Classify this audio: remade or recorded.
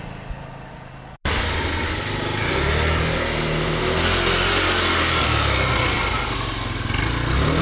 recorded